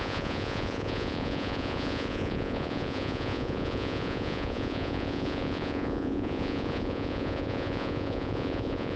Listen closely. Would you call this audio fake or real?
fake